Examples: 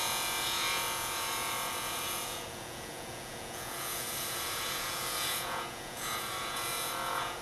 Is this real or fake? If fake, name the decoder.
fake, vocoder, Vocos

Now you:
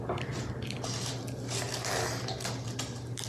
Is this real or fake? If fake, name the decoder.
real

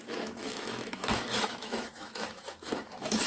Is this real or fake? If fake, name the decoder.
fake, autoencoder, DAC-VAE